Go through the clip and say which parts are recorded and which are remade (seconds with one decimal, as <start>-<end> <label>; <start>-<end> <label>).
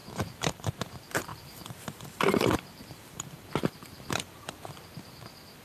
0.0-0.7 remade; 0.7-1.3 recorded; 1.3-4.1 remade; 4.1-5.6 recorded